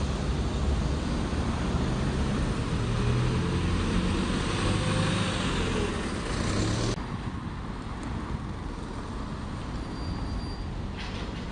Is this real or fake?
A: real